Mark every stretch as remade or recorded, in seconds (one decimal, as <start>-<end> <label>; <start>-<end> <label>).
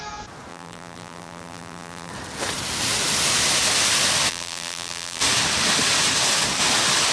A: 0.0-0.5 recorded; 0.5-2.1 remade; 2.1-4.3 recorded; 4.3-5.2 remade; 5.2-7.1 recorded